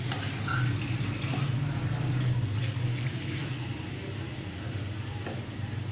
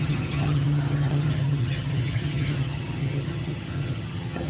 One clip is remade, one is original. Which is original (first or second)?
first